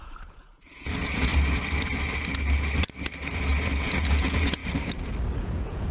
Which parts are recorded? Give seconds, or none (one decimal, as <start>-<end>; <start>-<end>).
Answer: 1.3-3.8; 4.6-5.4

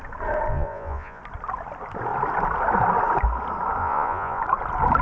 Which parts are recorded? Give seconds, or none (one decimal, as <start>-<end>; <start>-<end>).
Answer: 0.0-0.5; 1.2-3.8; 4.4-5.0

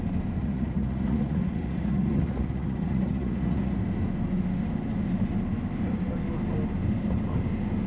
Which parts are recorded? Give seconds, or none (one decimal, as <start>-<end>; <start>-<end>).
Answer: 0.0-0.4; 3.8-7.9

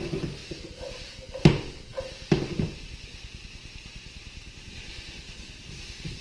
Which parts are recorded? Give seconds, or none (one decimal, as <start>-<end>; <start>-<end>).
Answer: 0.0-0.4; 1.1-6.2

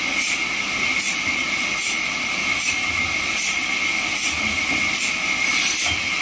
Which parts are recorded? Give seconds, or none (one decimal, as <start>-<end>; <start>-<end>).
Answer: 0.0-1.4; 5.1-6.2

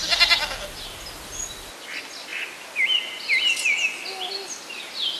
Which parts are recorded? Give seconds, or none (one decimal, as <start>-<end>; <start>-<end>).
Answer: 0.0-5.2

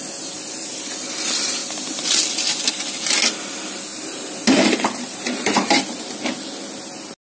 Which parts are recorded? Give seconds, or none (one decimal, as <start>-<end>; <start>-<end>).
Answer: 0.0-3.9; 5.8-7.4

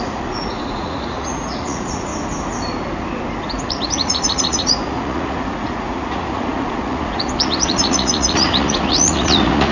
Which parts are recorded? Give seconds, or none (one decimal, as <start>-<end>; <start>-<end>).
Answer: 2.1-3.4